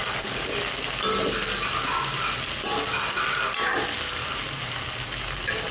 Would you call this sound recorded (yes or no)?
yes